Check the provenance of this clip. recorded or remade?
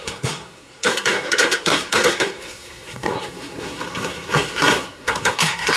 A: remade